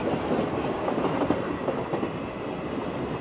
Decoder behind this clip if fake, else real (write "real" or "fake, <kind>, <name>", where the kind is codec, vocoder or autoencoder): real